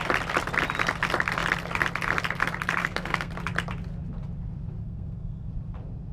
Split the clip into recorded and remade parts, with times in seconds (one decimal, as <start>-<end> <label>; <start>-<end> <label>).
0.0-2.8 recorded; 2.8-3.3 remade; 3.3-4.8 recorded; 4.8-5.5 remade; 5.5-6.1 recorded